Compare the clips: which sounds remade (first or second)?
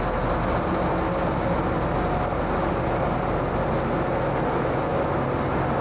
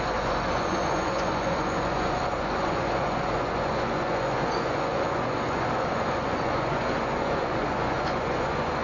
second